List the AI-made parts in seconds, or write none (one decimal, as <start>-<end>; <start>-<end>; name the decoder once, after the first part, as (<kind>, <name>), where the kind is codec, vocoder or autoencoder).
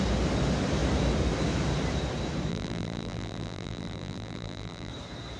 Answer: 2.5-4.9 (vocoder, BigVGAN v2)